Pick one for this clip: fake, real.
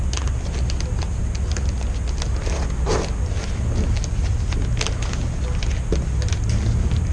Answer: real